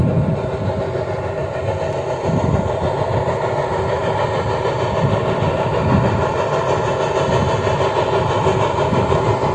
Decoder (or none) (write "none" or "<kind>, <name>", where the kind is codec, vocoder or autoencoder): none